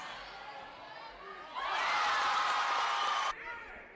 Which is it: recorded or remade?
recorded